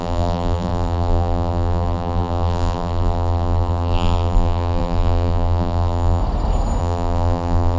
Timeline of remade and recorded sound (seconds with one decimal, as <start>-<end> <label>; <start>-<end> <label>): 0.0-6.2 remade; 6.2-6.8 recorded; 6.8-7.8 remade